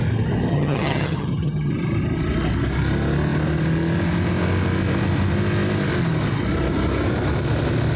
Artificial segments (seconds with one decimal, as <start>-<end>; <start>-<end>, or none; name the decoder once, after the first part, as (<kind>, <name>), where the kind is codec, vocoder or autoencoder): 0.5-1.7 (vocoder, HiFi-GAN)